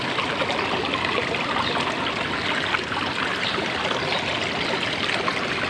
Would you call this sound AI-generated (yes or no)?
no